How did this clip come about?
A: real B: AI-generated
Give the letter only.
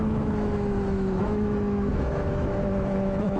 B